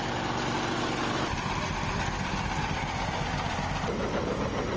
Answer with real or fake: real